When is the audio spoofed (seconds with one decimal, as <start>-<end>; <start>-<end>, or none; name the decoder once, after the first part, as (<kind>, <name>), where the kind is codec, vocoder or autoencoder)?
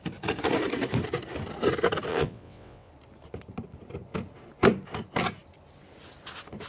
2.1-2.9 (vocoder, WaveNeXt)